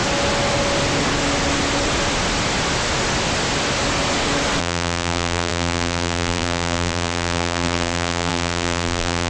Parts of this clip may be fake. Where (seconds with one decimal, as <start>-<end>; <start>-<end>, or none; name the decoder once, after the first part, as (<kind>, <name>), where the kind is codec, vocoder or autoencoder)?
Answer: 4.6-9.3 (vocoder, BigVGAN v2)